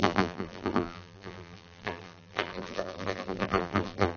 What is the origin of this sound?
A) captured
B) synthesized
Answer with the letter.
B